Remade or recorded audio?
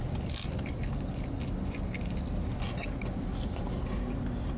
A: recorded